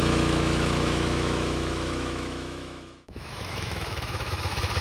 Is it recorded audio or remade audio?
remade